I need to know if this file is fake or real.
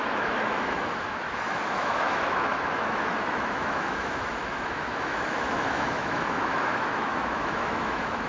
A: fake